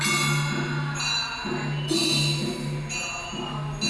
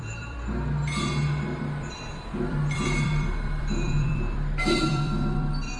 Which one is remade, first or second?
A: second